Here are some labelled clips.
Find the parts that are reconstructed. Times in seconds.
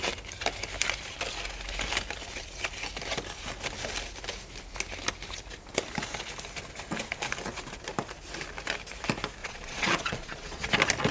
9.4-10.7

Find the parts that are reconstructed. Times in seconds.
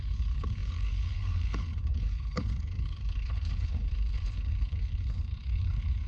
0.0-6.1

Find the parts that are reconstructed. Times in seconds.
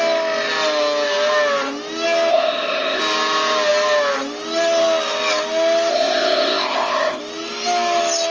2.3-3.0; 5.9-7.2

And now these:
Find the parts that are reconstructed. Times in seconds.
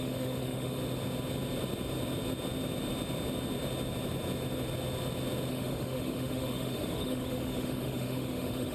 0.0-0.8; 5.5-8.7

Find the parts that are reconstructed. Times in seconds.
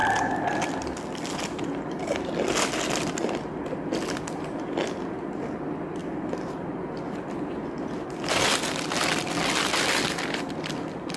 none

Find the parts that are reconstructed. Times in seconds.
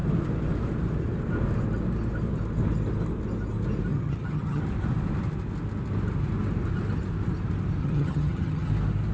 3.9-4.6; 7.8-8.7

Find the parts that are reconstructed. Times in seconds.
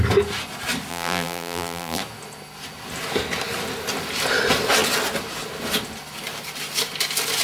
0.9-2.0